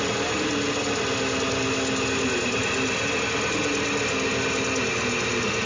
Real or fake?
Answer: real